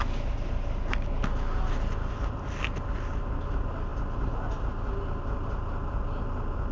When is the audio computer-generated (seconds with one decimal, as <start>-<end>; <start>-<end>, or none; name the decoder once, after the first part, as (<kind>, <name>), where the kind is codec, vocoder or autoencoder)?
none